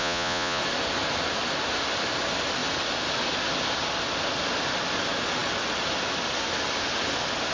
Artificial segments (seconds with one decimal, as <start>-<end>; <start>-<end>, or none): 0.0-0.6